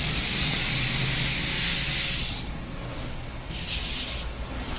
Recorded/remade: recorded